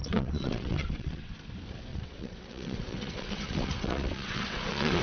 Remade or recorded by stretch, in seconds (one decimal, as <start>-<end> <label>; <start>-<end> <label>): 0.0-1.3 remade; 1.3-1.9 recorded; 1.9-5.0 remade